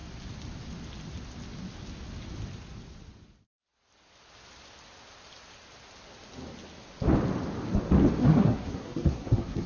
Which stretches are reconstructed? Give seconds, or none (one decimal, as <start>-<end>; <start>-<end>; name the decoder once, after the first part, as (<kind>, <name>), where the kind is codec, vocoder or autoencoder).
8.2-9.7 (codec, SNAC)